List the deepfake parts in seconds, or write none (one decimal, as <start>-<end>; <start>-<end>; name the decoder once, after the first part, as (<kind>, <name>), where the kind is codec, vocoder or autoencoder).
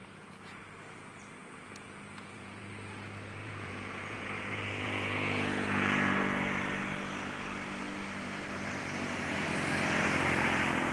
0.0-0.6 (vocoder, Vocos); 1.4-2.7; 3.4-6.4